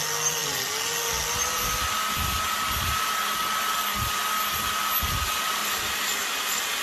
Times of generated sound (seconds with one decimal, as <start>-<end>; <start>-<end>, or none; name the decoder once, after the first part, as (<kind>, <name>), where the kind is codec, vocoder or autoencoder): 5.6-6.3 (vocoder, BigVGAN v2)